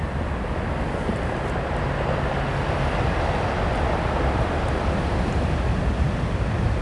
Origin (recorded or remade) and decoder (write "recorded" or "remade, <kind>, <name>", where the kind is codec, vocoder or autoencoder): recorded